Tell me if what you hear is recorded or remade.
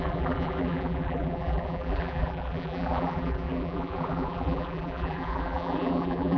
remade